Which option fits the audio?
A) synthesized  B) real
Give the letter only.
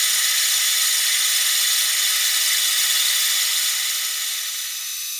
B